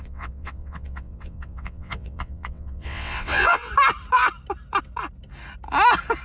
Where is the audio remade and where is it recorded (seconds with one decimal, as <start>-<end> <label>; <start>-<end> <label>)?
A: 0.0-3.7 remade; 3.7-6.2 recorded